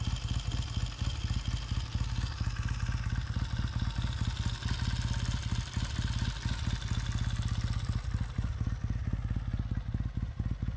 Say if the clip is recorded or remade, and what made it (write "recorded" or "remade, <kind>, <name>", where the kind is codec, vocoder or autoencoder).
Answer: recorded